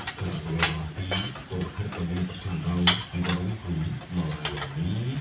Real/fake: real